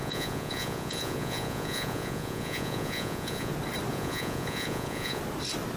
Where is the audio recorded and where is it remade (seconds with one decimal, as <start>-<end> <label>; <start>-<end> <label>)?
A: 0.0-3.5 remade; 3.5-3.9 recorded; 3.9-5.2 remade; 5.2-5.8 recorded